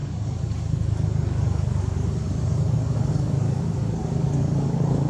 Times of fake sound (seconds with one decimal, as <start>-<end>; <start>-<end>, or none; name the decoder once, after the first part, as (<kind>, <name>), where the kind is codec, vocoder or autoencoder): 0.0-5.1 (codec, DAC)